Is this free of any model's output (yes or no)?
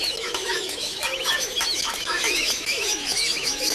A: no